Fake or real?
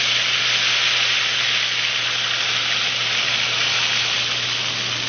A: real